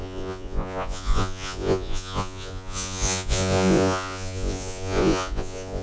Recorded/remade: remade